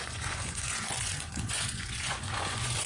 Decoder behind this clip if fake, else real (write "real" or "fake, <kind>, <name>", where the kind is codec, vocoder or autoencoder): fake, vocoder, Vocos